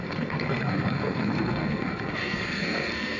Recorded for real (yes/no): no